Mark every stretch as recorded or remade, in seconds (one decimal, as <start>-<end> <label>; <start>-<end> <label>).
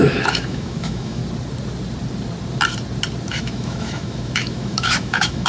0.0-1.2 remade; 1.2-3.3 recorded; 3.3-5.5 remade